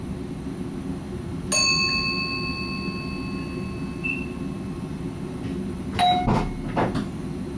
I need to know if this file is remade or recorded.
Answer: recorded